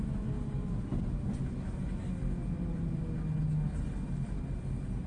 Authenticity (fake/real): real